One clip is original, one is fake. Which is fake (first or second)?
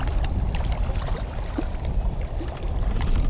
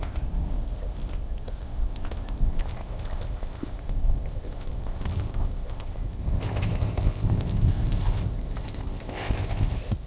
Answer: second